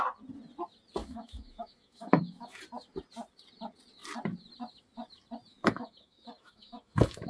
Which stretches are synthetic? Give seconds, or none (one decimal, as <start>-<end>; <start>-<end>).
1.0-2.6; 5.5-7.3